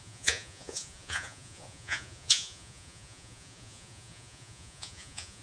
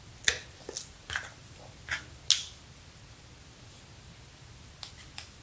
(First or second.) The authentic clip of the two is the second